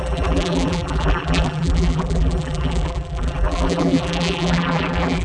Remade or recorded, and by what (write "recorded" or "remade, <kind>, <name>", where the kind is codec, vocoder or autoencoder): remade, vocoder, BigVGAN v2